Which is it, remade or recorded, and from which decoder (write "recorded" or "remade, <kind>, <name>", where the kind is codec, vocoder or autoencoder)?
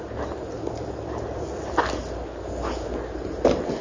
recorded